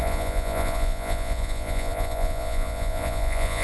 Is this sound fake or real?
fake